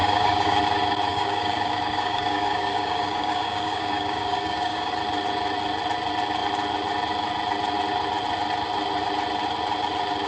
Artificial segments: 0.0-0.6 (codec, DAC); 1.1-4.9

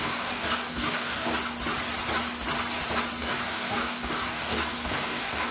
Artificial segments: 0.0-1.3 (codec, DAC); 3.2-5.5

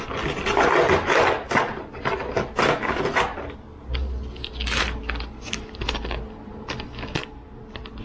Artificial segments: none

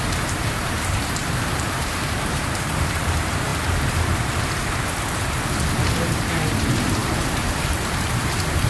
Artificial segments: 0.0-3.5 (vocoder, BigVGAN v2); 6.0-7.0; 7.6-8.7

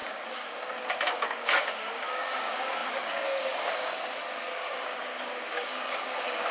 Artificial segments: 0.0-3.8 (codec, DAC); 4.3-6.5

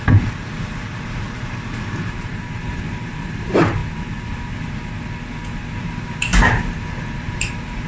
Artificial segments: 0.0-3.8 (vocoder, BigVGAN v2); 5.8-7.9

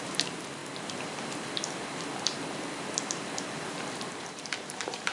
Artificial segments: 0.0-0.6 (vocoder, BigVGAN v2); 3.7-5.1